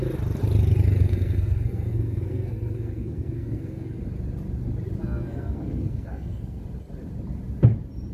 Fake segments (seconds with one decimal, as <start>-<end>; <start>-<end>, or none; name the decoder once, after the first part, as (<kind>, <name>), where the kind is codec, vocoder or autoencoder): 1.0-4.0 (codec, SNAC); 5.0-6.6